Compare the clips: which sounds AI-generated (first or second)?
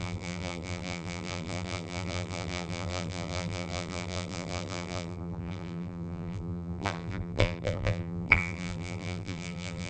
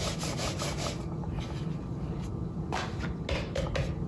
first